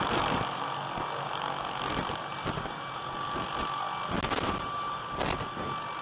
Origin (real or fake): real